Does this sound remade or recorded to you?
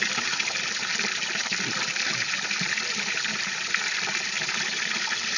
remade